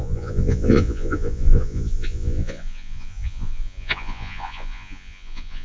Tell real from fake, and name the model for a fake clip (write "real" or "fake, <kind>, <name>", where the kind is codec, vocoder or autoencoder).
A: fake, vocoder, Vocos